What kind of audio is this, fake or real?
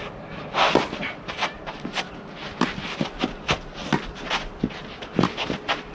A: real